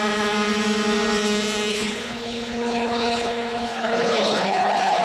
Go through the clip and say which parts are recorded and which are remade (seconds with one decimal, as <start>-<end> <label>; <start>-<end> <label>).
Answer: 0.0-1.7 recorded; 1.7-5.0 remade